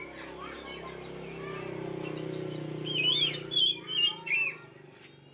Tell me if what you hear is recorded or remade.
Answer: recorded